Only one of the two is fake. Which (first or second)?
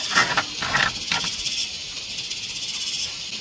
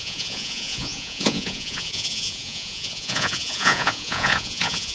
second